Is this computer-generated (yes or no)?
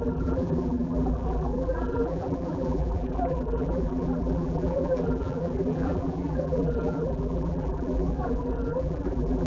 yes